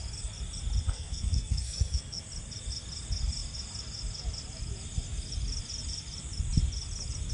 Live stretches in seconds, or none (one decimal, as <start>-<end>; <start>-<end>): 0.0-0.8; 2.2-7.3